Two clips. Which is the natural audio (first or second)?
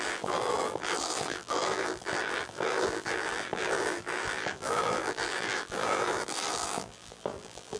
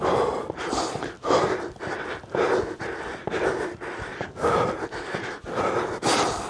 second